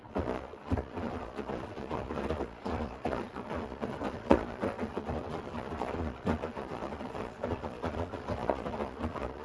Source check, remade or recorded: remade